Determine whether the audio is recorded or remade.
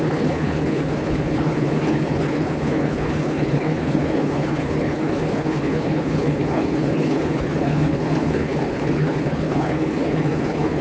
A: remade